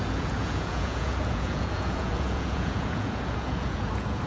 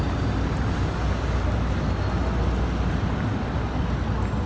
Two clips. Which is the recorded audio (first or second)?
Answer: second